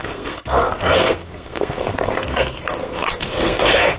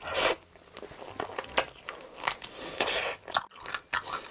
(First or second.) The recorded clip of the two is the second